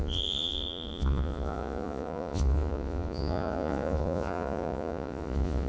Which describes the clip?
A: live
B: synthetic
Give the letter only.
B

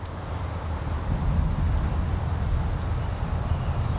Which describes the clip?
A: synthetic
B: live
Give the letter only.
B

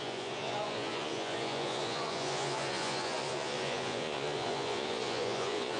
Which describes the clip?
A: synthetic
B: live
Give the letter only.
A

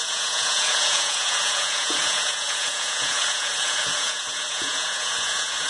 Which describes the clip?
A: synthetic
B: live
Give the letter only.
A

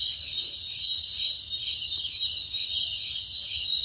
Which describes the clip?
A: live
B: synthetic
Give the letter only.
A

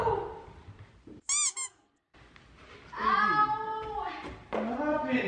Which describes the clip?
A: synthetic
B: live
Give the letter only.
B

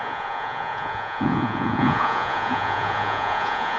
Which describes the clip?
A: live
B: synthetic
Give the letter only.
B